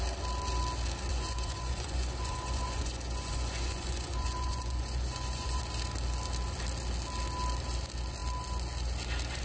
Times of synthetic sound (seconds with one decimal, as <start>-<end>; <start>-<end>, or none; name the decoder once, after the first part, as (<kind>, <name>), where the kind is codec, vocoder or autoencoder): 1.1-5.6 (vocoder, Vocos)